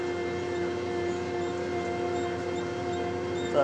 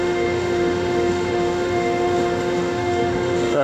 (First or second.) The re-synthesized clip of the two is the second